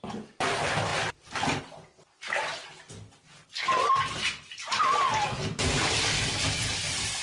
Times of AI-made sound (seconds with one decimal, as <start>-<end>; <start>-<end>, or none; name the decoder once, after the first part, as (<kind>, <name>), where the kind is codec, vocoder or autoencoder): none